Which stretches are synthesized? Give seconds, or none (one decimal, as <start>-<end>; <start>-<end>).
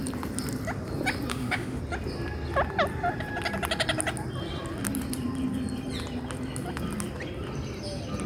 1.3-1.8